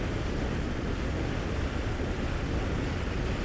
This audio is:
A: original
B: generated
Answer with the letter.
A